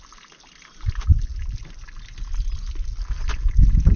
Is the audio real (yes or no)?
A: yes